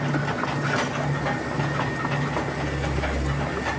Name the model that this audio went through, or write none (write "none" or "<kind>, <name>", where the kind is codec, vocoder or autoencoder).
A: none